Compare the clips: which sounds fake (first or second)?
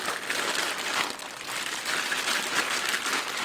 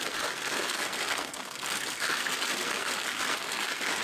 second